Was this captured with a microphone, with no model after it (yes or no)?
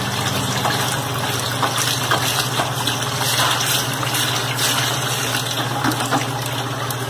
yes